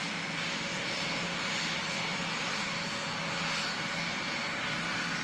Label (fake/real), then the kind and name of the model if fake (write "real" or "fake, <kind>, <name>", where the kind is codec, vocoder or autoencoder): real